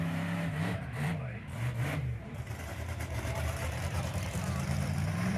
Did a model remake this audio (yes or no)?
yes